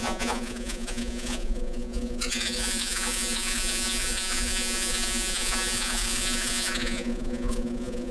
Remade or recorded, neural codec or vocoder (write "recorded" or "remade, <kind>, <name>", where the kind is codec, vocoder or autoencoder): remade, vocoder, Vocos